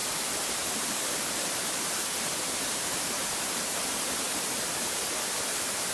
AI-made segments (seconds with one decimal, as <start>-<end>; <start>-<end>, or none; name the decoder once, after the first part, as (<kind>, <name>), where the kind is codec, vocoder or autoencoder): 0.5-5.9 (vocoder, BigVGAN v2)